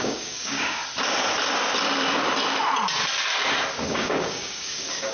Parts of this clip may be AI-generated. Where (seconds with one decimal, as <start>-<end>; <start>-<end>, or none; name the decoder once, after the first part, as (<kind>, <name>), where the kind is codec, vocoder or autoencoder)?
0.0-0.8 (codec, DAC); 3.9-5.1